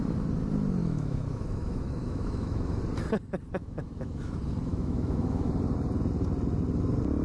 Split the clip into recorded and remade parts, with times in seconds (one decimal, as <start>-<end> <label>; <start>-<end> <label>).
0.0-0.8 recorded; 0.8-2.8 remade; 2.8-3.6 recorded; 3.6-4.3 remade; 4.3-4.7 recorded; 4.7-5.5 remade; 5.5-7.2 recorded

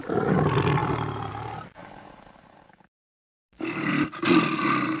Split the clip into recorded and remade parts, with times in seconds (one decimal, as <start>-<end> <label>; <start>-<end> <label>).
0.0-1.8 recorded; 1.8-3.9 remade; 3.9-5.0 recorded